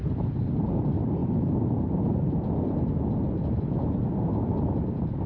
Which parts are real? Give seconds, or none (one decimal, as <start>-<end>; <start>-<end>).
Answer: 0.0-5.3